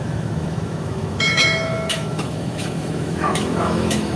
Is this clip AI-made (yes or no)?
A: yes